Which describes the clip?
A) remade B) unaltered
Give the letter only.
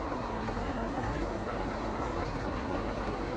A